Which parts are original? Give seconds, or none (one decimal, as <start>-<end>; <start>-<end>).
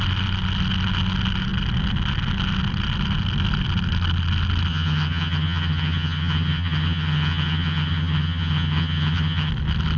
0.0-4.7; 9.5-10.0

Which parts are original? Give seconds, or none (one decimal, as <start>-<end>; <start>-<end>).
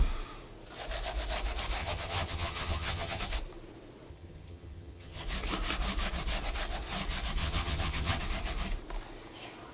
0.0-1.8; 3.2-4.1; 5.2-7.4; 8.2-9.7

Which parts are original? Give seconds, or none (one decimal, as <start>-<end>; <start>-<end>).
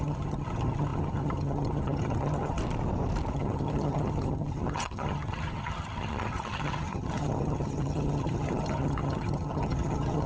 2.6-3.3